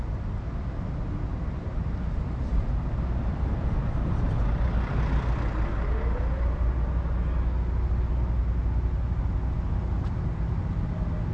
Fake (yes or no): no